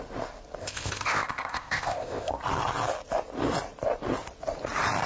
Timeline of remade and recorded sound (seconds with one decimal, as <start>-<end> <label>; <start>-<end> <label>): 0.0-0.6 recorded; 0.6-2.3 remade; 2.3-5.1 recorded